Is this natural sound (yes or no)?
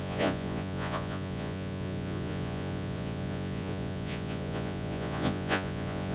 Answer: no